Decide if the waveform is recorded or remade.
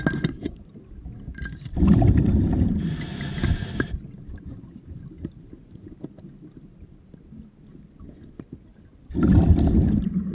recorded